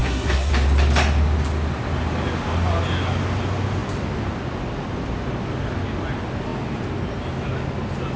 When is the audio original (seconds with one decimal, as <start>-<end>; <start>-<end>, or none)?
0.5-8.2